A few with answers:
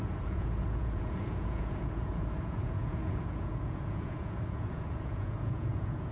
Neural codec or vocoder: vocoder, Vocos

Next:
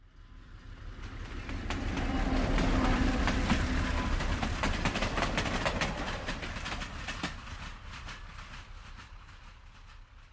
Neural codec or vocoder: none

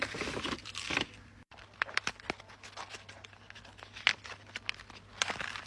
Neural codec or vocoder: none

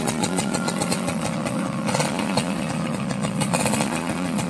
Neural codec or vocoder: vocoder, Vocos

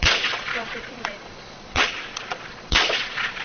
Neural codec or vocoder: vocoder, Vocos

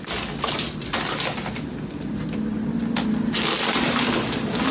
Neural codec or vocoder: none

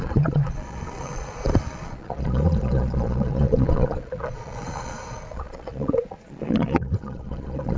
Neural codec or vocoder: vocoder, Vocos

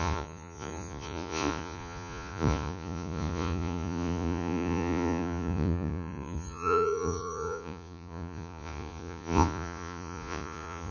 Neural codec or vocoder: vocoder, Vocos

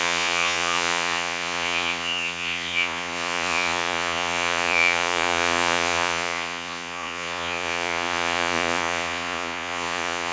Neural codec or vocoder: vocoder, Vocos